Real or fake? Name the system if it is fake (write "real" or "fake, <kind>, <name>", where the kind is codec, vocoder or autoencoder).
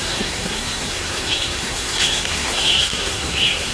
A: fake, codec, SNAC